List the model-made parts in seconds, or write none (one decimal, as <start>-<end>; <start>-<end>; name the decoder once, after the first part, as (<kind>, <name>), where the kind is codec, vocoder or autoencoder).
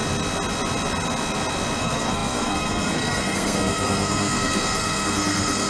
1.8-5.7 (codec, SNAC)